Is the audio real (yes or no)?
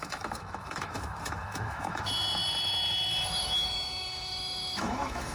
no